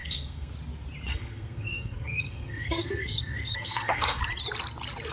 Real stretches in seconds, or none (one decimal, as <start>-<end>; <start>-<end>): 0.5-1.1; 4.2-5.1